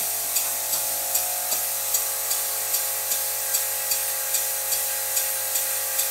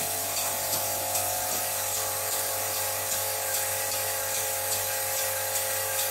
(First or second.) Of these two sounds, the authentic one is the first